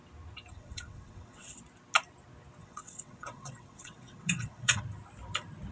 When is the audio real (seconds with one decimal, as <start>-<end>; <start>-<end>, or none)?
0.0-0.5; 1.6-2.6; 4.8-5.7